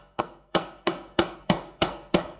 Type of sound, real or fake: fake